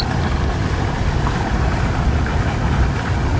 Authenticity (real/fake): real